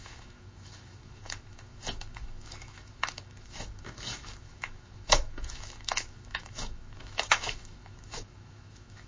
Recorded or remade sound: remade